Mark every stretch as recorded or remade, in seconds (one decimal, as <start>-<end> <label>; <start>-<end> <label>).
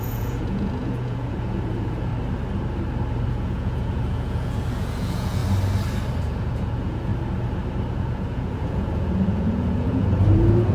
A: 0.0-2.1 remade; 2.1-3.3 recorded; 3.3-5.4 remade; 5.4-6.2 recorded; 6.2-7.1 remade; 7.1-7.9 recorded; 7.9-10.7 remade